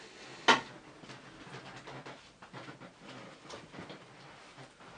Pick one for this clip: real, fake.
real